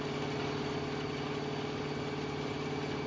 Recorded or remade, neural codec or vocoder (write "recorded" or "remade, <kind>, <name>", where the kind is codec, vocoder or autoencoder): recorded